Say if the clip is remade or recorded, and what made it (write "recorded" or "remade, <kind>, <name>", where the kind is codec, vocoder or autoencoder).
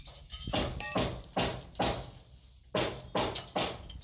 recorded